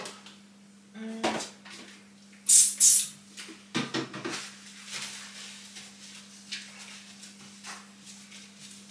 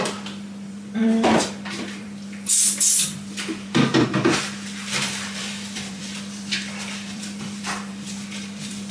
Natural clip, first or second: first